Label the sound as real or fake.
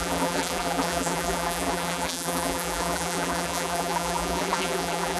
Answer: fake